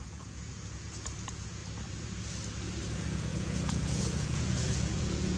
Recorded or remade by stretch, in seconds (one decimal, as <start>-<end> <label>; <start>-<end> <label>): 0.0-1.6 remade; 1.6-2.9 recorded; 2.9-5.4 remade